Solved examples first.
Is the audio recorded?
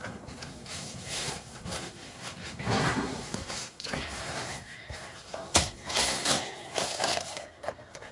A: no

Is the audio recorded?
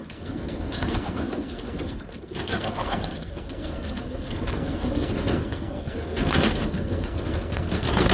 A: no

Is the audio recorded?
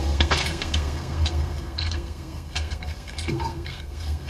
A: no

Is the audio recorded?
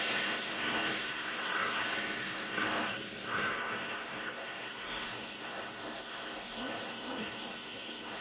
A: no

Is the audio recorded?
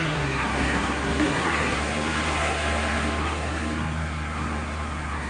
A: no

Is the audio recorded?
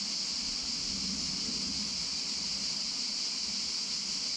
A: yes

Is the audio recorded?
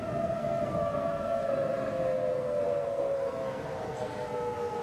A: no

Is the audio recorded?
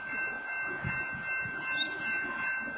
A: yes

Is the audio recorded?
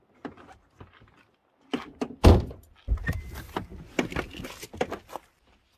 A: yes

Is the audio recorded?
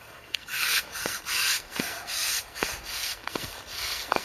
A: no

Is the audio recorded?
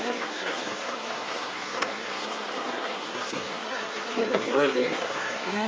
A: no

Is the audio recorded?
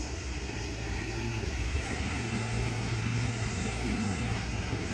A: no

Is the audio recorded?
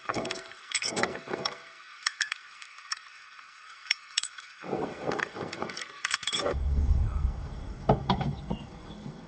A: no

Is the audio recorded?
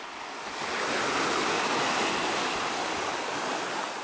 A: yes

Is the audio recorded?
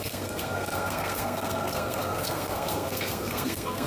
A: no